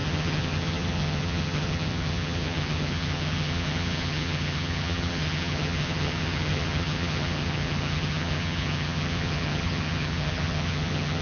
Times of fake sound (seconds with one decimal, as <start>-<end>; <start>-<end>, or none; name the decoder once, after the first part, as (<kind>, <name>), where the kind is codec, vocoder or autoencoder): 0.0-11.2 (vocoder, HiFi-GAN)